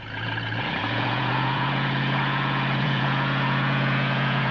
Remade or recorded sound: remade